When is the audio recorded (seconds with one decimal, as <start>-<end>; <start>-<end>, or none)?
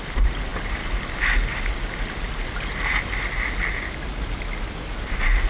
0.0-5.5